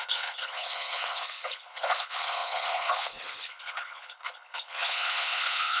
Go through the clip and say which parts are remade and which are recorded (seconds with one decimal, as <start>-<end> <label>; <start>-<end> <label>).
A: 0.0-5.8 remade